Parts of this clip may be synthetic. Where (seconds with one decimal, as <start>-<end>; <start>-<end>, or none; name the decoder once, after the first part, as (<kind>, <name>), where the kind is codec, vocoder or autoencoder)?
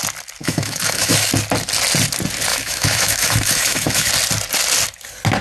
0.4-1.3 (autoencoder, DAC-VAE); 2.5-4.1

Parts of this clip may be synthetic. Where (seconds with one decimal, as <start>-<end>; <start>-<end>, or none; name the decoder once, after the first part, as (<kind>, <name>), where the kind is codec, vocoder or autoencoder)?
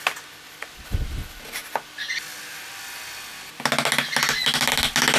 none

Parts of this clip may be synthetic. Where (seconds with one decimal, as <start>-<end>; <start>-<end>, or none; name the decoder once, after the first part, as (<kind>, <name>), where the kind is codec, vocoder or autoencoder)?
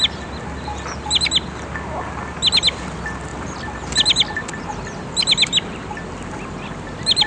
none